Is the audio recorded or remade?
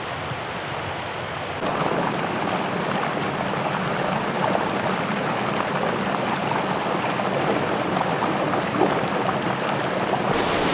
recorded